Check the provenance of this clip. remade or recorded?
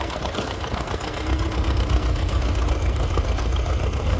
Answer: remade